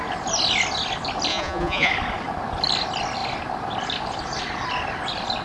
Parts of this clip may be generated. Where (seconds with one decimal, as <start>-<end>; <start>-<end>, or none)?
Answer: 1.3-1.9